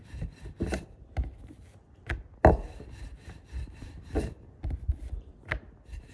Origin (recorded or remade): recorded